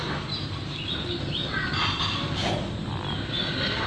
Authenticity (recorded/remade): recorded